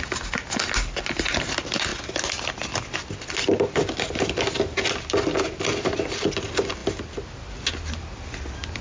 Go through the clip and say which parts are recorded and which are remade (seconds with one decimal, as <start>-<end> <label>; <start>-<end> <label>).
0.0-8.8 recorded